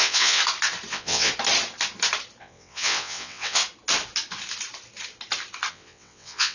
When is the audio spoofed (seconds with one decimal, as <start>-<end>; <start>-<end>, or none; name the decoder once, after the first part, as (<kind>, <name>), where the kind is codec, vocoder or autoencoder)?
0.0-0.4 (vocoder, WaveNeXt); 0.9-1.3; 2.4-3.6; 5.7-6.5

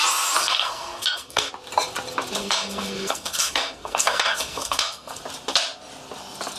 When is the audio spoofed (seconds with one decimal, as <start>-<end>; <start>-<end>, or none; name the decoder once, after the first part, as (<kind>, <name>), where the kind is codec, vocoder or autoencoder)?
0.4-1.5 (codec, SNAC); 2.4-5.2

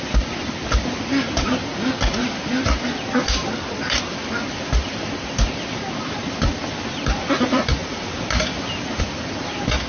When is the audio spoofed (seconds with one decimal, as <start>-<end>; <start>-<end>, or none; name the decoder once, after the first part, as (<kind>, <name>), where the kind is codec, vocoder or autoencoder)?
none

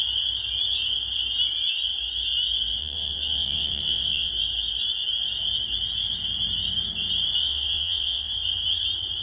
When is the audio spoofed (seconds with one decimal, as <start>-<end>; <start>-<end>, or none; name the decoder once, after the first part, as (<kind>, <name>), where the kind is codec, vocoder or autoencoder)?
2.8-4.3 (vocoder, WaveNeXt); 7.4-8.3

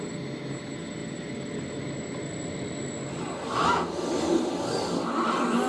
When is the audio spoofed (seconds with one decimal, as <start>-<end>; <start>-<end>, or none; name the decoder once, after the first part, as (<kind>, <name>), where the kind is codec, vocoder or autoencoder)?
none

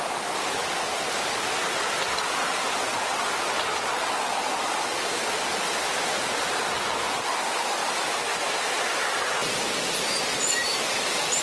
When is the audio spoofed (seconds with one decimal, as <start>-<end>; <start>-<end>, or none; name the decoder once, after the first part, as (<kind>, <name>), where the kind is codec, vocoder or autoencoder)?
none

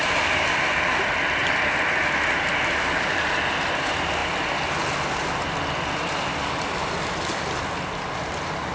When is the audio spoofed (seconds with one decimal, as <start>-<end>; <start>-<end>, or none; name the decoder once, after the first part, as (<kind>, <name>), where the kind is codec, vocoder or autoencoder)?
none